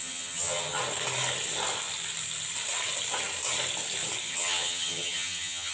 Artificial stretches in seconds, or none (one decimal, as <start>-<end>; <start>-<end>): 0.0-0.8; 4.2-5.7